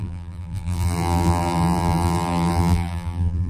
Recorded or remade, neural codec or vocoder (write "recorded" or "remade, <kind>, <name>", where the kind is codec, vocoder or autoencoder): remade, vocoder, BigVGAN v2